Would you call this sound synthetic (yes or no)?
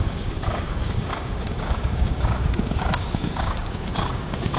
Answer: yes